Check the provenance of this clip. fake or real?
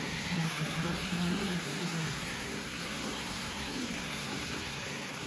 fake